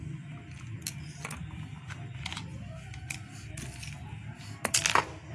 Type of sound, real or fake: real